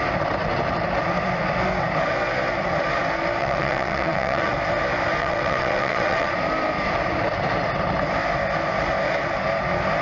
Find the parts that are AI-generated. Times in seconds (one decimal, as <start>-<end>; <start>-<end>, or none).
3.4-4.5; 5.2-6.3